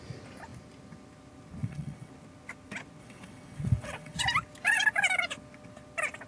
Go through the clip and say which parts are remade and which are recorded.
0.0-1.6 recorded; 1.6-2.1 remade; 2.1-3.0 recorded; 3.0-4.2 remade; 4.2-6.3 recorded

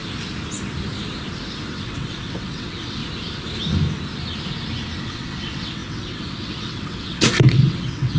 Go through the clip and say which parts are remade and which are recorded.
0.0-1.7 recorded; 1.7-3.0 remade; 3.0-5.0 recorded; 5.0-8.2 remade

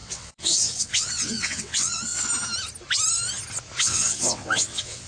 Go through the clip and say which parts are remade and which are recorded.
0.0-2.3 remade; 2.3-3.8 recorded; 3.8-5.1 remade

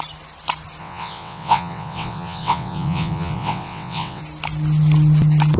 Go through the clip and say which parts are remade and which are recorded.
0.0-0.8 recorded; 0.8-4.2 remade; 4.2-5.6 recorded

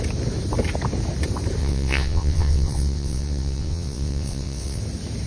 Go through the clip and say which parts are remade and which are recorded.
0.0-1.6 recorded; 1.6-4.8 remade; 4.8-5.3 recorded

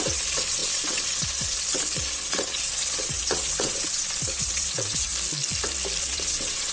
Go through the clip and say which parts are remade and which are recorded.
0.0-5.1 remade; 5.1-6.0 recorded; 6.0-6.7 remade

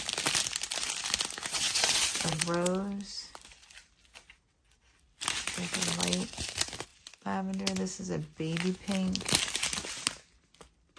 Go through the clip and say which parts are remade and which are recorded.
0.0-1.5 recorded; 1.5-2.4 remade; 2.4-11.0 recorded

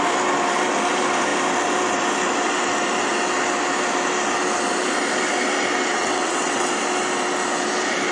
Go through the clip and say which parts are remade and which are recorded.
0.0-5.9 recorded; 5.9-6.7 remade; 6.7-8.1 recorded